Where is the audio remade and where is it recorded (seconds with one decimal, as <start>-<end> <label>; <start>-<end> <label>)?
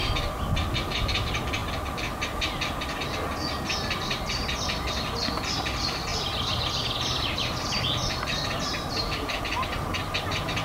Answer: 0.0-6.1 recorded; 6.1-9.4 remade; 9.4-10.6 recorded